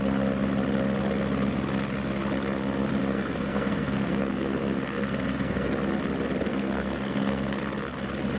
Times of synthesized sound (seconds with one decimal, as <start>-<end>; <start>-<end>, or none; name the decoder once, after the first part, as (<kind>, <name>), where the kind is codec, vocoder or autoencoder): 3.0-5.7 (codec, SNAC); 6.5-7.6